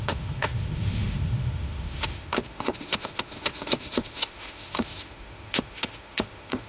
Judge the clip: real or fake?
fake